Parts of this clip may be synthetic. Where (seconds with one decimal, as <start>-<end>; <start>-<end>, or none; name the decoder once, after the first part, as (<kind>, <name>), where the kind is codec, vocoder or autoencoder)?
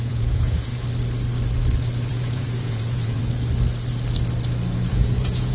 0.0-0.7 (vocoder, Vocos); 2.1-3.2; 4.9-5.5